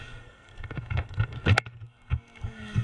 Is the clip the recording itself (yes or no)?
no